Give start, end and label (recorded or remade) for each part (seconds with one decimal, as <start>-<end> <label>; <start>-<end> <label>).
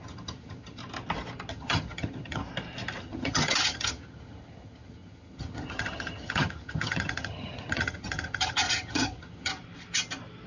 0.0-0.8 remade; 0.8-1.5 recorded; 1.5-2.4 remade; 2.4-3.0 recorded; 3.0-9.5 remade; 9.5-10.5 recorded